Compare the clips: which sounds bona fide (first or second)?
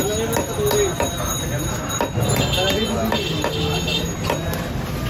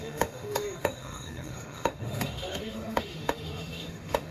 first